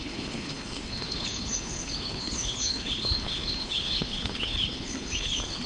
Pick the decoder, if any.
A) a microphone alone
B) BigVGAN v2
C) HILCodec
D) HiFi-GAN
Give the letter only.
C